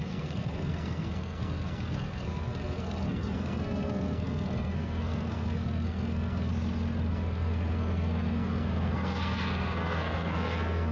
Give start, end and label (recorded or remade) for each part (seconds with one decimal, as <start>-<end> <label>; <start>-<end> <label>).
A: 0.0-6.5 remade; 6.5-7.1 recorded; 7.1-10.9 remade